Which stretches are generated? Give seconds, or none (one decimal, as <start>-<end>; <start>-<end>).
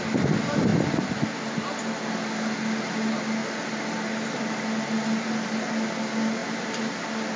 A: none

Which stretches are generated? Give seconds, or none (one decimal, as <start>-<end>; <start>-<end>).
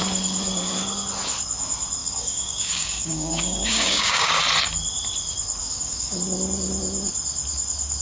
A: 2.0-4.4; 5.6-6.2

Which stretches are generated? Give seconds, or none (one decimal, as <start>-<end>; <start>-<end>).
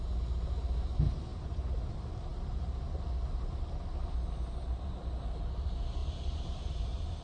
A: 1.3-1.9; 6.0-7.2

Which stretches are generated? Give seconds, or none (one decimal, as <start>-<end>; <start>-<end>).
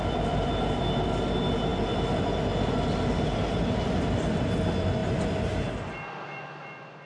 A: none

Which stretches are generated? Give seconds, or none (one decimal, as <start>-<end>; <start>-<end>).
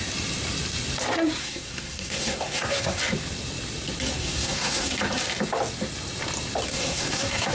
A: 1.4-3.0; 4.2-4.9; 6.7-7.5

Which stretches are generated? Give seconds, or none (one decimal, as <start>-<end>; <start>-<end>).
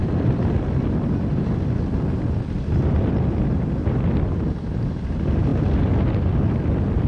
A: none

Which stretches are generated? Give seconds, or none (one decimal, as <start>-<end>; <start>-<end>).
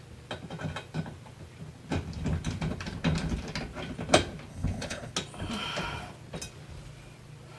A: 4.5-5.1